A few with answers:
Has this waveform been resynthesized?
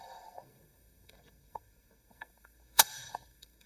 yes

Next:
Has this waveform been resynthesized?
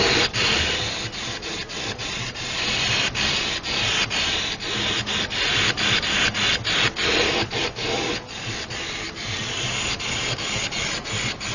no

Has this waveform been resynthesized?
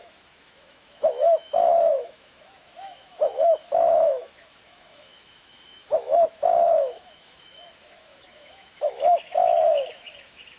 yes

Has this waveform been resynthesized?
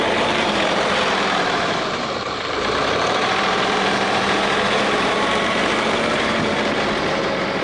yes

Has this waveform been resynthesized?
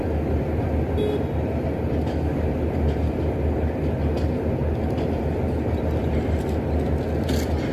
no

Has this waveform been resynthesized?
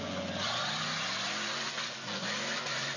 yes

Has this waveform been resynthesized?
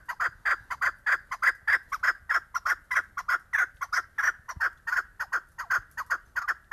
no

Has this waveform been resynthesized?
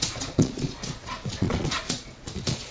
yes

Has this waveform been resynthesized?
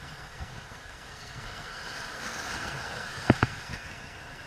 yes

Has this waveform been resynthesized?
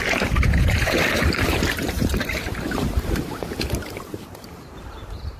yes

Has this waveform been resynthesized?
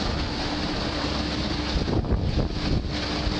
no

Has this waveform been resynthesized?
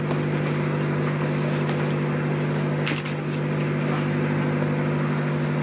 no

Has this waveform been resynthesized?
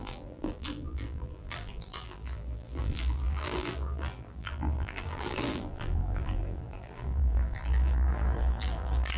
yes